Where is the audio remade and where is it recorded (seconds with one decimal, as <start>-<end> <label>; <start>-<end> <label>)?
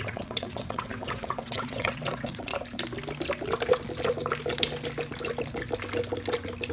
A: 0.0-2.5 remade; 2.5-6.7 recorded